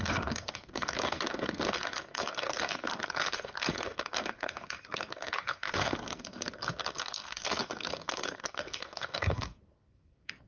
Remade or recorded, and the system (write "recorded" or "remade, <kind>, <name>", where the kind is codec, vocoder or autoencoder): remade, codec, SNAC